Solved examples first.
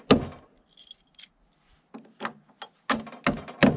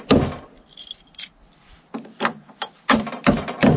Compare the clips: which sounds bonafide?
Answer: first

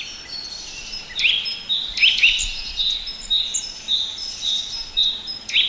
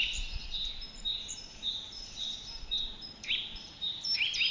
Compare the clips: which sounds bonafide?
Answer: first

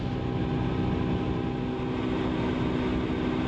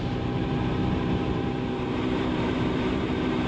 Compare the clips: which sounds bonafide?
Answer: first